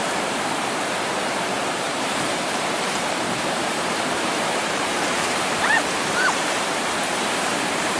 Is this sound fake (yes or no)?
yes